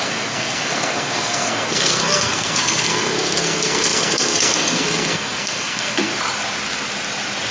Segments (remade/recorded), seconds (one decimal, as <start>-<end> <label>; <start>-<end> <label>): 0.0-6.1 remade; 6.1-7.5 recorded